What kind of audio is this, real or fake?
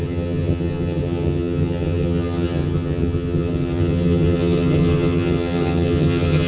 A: fake